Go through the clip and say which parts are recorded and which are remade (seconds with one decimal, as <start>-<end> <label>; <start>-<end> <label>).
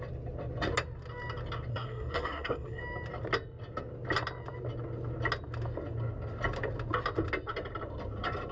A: 0.0-1.7 recorded; 1.7-2.8 remade; 2.8-8.5 recorded